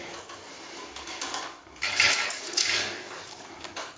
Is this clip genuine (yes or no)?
no